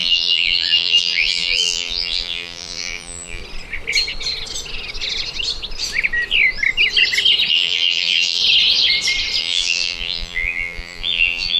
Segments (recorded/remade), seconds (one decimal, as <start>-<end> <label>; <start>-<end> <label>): 0.0-3.4 remade; 3.4-7.5 recorded; 7.5-8.4 remade; 8.4-9.4 recorded; 9.4-11.6 remade